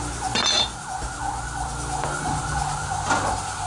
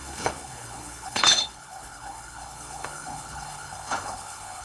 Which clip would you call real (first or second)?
first